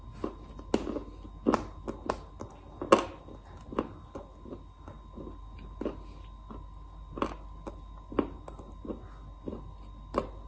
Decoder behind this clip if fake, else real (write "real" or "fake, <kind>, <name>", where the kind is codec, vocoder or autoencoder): real